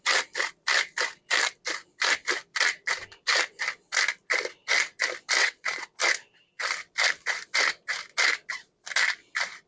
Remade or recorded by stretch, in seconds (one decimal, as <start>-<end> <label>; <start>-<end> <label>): 0.0-5.4 recorded; 5.4-6.0 remade; 6.0-9.7 recorded

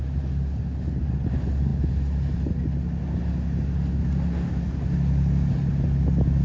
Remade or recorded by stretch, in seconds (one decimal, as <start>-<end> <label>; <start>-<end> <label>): 0.0-6.4 recorded

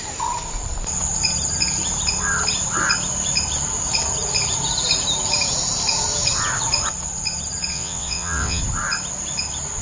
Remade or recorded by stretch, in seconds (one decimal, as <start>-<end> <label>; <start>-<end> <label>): 0.0-7.7 recorded; 7.7-8.6 remade; 8.6-9.8 recorded

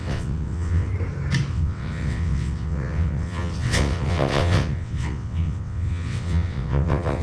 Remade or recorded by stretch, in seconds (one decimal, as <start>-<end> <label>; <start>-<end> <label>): 0.0-0.9 remade; 0.9-1.5 recorded; 1.5-7.2 remade

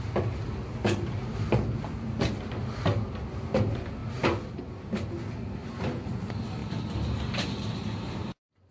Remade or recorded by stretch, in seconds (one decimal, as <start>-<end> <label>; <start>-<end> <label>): 0.0-8.7 recorded